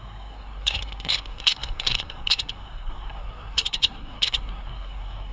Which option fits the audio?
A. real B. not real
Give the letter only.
B